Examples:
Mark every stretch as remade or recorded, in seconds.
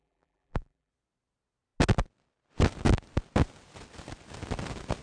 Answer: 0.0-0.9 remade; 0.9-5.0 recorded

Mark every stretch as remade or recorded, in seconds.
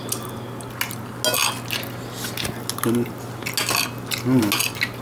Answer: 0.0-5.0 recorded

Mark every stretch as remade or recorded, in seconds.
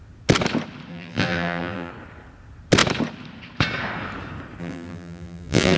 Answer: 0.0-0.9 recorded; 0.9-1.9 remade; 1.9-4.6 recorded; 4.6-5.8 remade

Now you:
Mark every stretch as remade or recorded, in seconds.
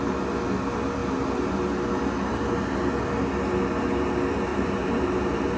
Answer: 0.0-4.5 recorded; 4.5-5.6 remade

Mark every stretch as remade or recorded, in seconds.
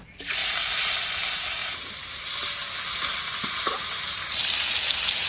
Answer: 0.0-0.4 recorded; 0.4-1.0 remade; 1.0-1.6 recorded; 1.6-2.2 remade; 2.2-3.1 recorded; 3.1-4.4 remade; 4.4-5.3 recorded